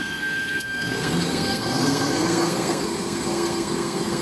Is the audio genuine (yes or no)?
no